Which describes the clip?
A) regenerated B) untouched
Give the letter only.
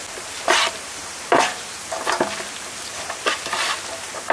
B